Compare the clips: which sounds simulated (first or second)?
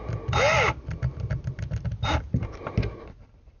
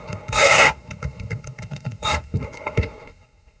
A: second